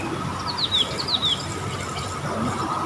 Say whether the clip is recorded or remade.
recorded